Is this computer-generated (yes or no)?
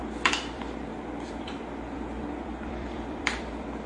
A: yes